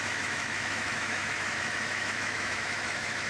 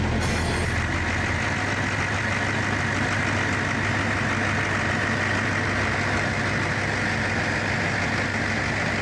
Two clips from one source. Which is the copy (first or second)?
first